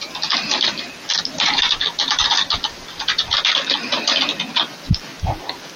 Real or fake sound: real